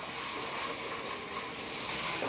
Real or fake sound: real